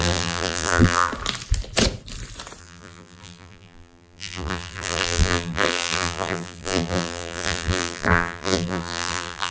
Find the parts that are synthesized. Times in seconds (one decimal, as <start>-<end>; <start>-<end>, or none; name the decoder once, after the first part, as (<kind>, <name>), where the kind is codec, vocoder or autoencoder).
0.0-1.1 (vocoder, BigVGAN v2); 2.6-9.5